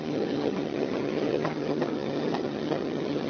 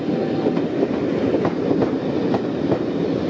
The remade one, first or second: first